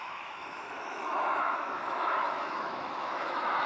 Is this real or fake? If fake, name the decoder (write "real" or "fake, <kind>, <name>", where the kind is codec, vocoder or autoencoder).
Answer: fake, autoencoder, DAC-VAE